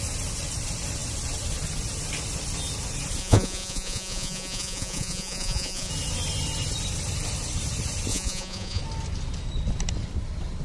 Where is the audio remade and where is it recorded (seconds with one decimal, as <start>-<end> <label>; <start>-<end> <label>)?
0.0-3.2 recorded; 3.2-5.9 remade; 5.9-8.1 recorded; 8.1-8.8 remade; 8.8-10.6 recorded